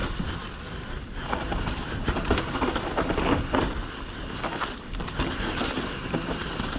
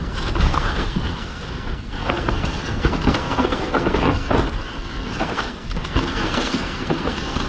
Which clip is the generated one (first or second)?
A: second